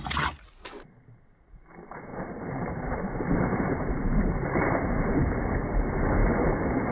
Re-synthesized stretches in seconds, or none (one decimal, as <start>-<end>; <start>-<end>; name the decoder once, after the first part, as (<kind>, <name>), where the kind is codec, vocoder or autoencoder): 2.1-4.3 (vocoder, BigVGAN v2)